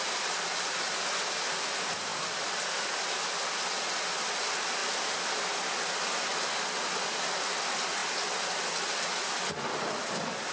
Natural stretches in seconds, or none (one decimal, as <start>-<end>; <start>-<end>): 0.0-10.5